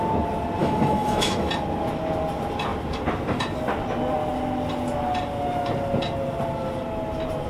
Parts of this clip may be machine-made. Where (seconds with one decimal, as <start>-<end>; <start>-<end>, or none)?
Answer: 0.6-1.5